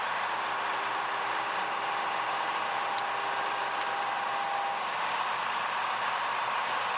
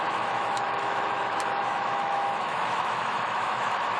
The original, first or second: first